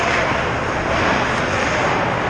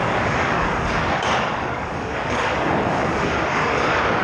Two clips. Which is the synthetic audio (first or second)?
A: second